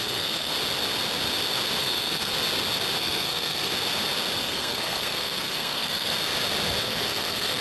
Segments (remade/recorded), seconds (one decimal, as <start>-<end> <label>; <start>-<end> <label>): 0.0-0.5 remade; 0.5-1.8 recorded; 1.8-2.3 remade; 2.3-3.0 recorded; 3.0-3.7 remade; 3.7-4.4 recorded; 4.4-6.1 remade; 6.1-6.8 recorded; 6.8-7.6 remade